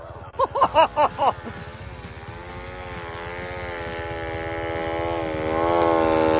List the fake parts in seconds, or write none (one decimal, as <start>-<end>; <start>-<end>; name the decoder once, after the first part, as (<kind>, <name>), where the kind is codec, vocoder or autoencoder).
none